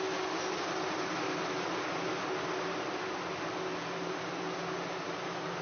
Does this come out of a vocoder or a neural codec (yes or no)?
no